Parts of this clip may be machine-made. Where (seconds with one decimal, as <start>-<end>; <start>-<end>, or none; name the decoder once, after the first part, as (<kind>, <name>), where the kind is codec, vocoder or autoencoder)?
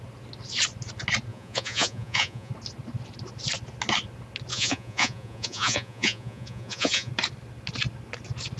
1.3-2.5 (vocoder, Vocos); 4.5-7.1